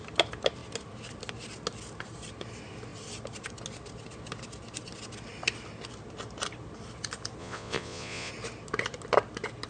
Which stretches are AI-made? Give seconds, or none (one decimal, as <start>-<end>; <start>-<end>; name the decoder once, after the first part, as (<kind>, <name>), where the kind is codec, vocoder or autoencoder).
7.4-8.3 (vocoder, Vocos)